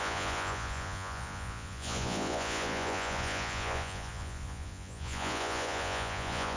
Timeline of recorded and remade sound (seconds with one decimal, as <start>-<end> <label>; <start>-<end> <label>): 0.0-6.6 remade